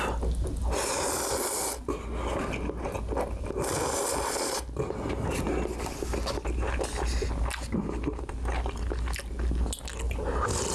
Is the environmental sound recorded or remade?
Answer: recorded